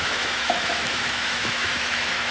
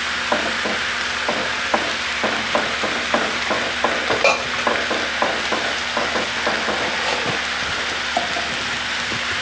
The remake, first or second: first